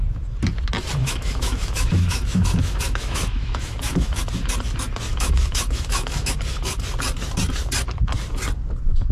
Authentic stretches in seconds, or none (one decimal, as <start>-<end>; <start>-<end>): 0.0-1.0; 4.2-5.1; 6.4-9.1